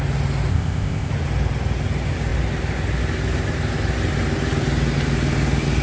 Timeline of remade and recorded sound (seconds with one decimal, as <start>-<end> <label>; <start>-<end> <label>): 0.0-0.5 recorded; 0.5-1.1 remade; 1.1-5.8 recorded